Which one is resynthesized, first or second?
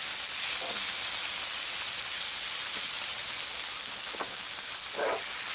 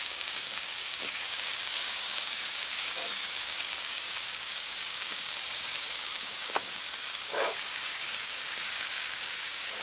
second